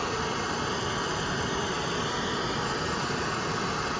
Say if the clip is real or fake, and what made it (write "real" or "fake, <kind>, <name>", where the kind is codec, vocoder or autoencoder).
real